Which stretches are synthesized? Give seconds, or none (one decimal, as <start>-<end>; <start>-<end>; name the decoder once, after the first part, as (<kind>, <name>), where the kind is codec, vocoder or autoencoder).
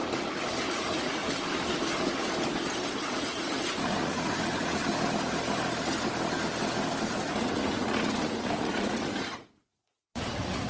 0.7-1.2 (vocoder, Vocos); 3.0-4.8; 7.1-10.7